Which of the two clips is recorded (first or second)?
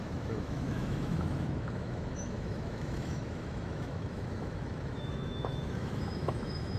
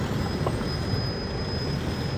second